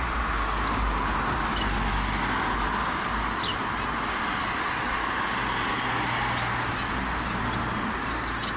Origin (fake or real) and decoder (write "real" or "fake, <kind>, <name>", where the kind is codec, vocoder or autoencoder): real